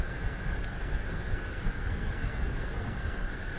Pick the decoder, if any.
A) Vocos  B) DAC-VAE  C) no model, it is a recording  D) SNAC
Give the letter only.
D